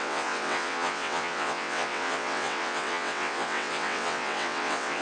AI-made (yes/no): yes